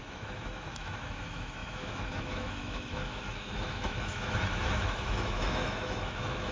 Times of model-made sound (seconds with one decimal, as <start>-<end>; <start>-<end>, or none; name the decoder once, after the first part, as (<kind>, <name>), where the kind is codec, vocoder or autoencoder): 0.0-6.5 (autoencoder, DAC-VAE)